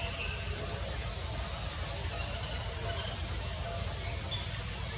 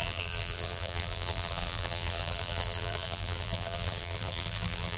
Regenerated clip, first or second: second